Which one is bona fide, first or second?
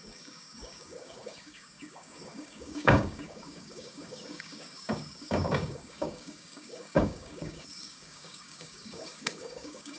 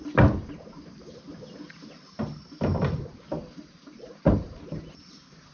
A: second